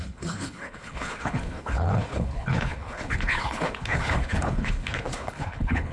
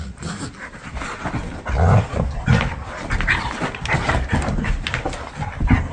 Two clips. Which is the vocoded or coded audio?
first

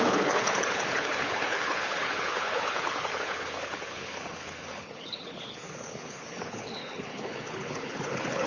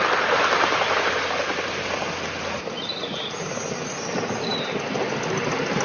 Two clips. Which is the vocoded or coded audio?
first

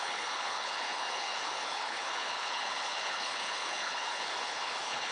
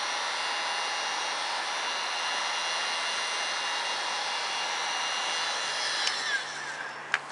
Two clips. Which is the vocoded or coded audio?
first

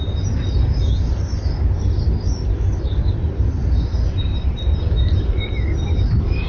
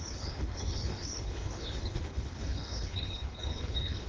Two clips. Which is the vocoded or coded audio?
second